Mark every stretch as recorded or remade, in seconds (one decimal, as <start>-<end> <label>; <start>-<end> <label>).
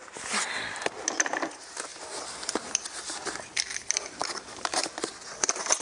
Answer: 0.0-4.2 recorded; 4.2-4.9 remade; 4.9-5.8 recorded